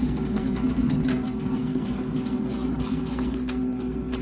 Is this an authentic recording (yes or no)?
no